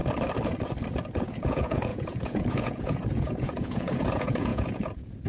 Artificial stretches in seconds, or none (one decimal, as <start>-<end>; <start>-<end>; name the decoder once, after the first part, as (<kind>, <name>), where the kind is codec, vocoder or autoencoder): 1.2-5.3 (vocoder, Vocos)